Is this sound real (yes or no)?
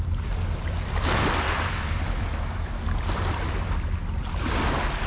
yes